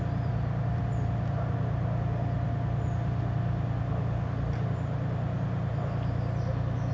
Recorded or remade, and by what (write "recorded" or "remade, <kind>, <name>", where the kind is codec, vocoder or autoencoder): recorded